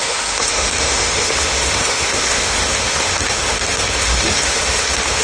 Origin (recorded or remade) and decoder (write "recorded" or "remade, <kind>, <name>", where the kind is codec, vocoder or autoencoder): remade, autoencoder, DAC-VAE